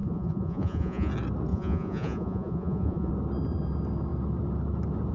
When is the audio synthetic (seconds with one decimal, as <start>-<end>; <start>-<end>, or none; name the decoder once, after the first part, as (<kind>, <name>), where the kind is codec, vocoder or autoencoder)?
0.0-1.1 (vocoder, Vocos); 1.5-3.1